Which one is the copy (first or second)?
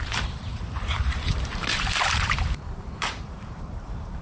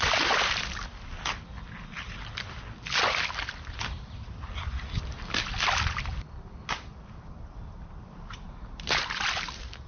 first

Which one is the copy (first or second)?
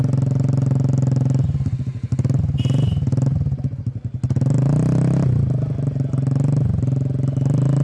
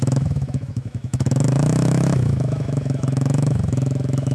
second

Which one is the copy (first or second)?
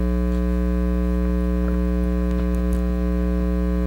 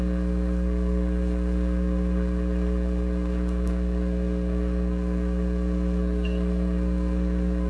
second